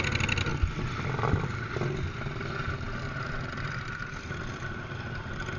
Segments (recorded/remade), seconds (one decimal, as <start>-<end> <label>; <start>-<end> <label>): 0.0-5.6 recorded